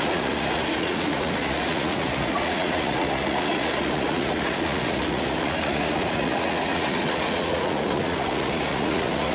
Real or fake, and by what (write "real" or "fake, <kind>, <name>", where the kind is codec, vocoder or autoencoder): fake, vocoder, Vocos